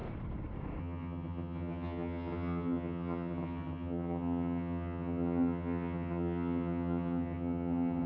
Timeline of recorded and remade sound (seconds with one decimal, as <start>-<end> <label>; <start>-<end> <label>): 0.0-0.8 recorded; 0.8-8.1 remade